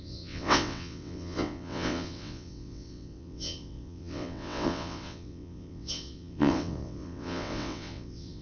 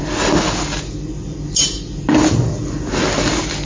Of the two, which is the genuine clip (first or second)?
second